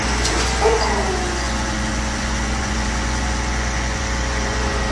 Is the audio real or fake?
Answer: fake